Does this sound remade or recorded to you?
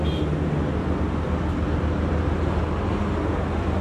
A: recorded